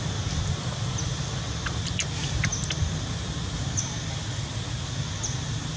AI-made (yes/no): no